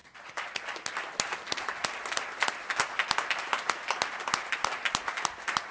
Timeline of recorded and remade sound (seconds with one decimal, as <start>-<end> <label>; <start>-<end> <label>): 0.0-5.7 recorded